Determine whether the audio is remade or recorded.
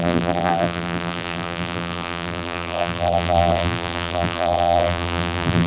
remade